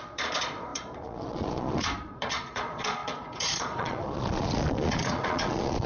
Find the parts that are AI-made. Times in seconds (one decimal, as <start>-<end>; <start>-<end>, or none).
0.0-5.9